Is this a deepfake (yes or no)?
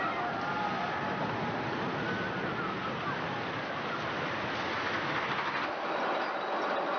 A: no